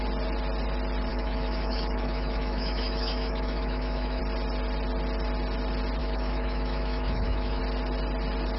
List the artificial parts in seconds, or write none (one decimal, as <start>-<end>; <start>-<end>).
1.1-4.2; 6.0-7.6